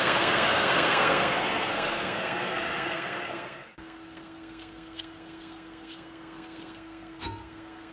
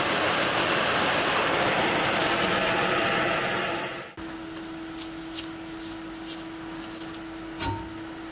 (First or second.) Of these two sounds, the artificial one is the first